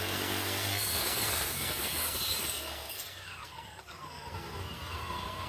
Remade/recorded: remade